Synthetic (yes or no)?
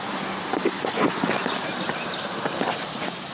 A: no